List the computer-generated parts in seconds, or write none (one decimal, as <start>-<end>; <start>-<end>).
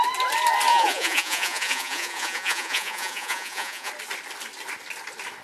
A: 0.7-3.9